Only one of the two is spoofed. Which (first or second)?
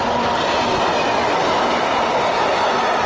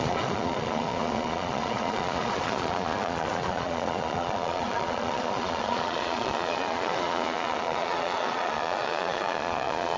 second